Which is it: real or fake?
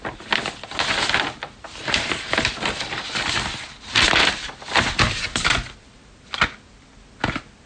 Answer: real